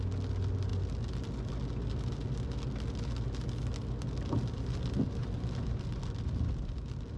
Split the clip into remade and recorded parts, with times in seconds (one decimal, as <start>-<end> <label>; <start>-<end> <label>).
0.0-7.2 recorded